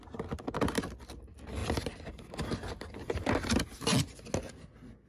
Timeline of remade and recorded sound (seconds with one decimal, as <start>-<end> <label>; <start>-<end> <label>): 0.0-5.1 recorded